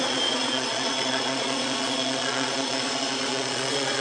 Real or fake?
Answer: fake